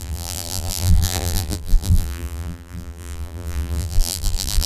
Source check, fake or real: fake